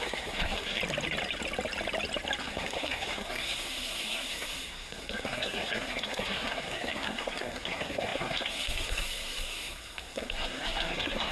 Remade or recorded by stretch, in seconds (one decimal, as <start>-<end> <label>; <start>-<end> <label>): 0.0-0.8 remade; 0.8-2.4 recorded; 2.4-11.3 remade